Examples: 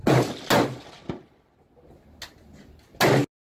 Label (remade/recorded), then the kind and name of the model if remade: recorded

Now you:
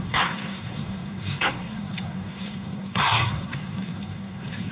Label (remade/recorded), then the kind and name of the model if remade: remade, codec, SNAC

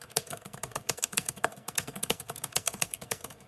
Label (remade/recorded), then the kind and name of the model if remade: remade, codec, SNAC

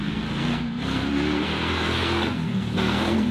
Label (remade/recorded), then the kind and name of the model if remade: remade, codec, SNAC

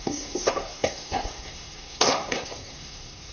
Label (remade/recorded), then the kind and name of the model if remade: remade, codec, SNAC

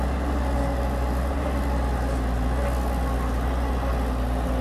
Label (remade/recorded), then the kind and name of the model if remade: recorded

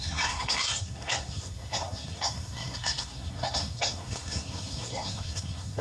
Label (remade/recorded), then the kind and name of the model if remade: remade, codec, SNAC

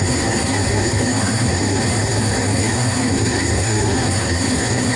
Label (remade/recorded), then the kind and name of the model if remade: remade, codec, SNAC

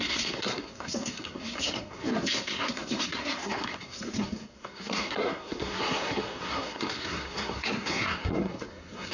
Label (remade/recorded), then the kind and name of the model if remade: remade, codec, SNAC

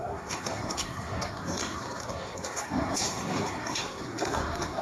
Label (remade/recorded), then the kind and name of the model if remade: remade, codec, SNAC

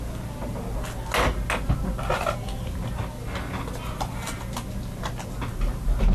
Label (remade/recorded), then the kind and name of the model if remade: recorded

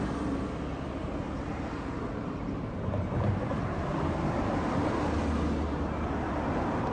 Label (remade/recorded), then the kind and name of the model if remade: recorded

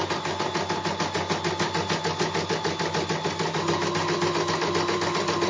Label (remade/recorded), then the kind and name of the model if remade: recorded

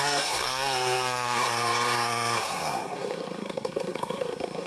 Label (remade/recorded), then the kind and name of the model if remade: remade, codec, SNAC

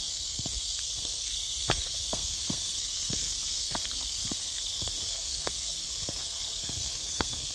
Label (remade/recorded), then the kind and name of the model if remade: remade, codec, SNAC